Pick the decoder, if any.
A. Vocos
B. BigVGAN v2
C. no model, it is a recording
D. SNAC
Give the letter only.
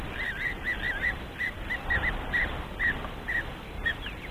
C